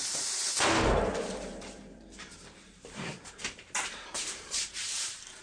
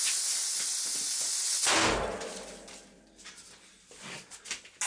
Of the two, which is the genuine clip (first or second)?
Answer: second